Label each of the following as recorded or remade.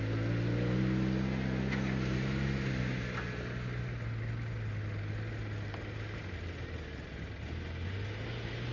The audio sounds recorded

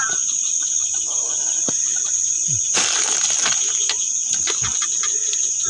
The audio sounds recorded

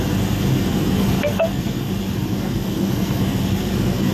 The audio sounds remade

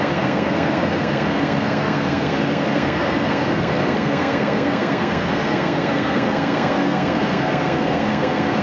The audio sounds remade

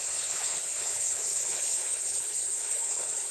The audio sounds remade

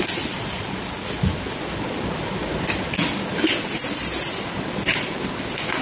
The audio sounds recorded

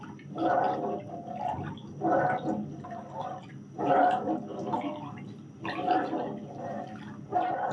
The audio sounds recorded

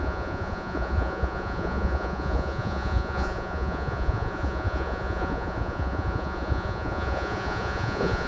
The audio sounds remade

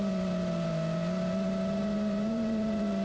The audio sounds recorded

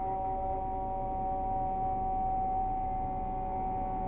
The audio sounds recorded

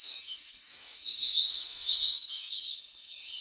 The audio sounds remade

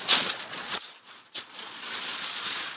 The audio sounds remade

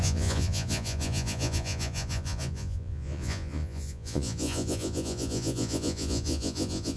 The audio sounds remade